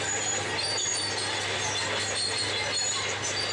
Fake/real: real